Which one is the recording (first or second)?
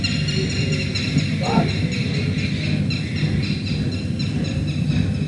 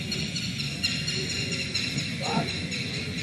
first